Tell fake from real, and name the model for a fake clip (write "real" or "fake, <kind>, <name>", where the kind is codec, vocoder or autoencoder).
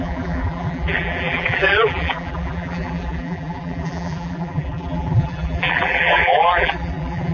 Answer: fake, vocoder, BigVGAN v2